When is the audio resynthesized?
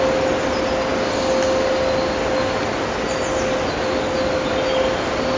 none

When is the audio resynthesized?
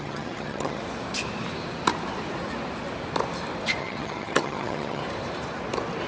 0.0-0.8 (vocoder, HiFi-GAN); 3.8-5.0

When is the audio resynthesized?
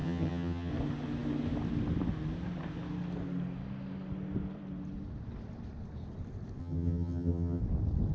0.0-0.7 (vocoder, HiFi-GAN); 6.6-7.6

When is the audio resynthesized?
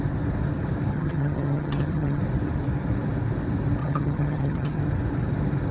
0.9-2.2 (vocoder, HiFi-GAN); 3.8-4.8